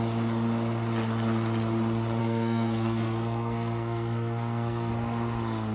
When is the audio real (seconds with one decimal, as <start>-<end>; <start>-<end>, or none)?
0.0-2.2; 4.9-5.7